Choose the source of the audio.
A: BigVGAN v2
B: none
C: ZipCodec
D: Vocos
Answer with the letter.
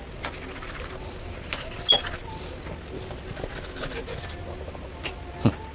B